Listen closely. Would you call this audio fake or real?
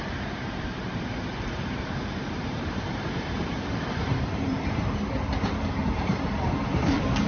fake